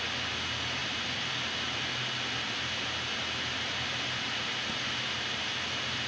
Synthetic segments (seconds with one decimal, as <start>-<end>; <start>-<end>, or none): none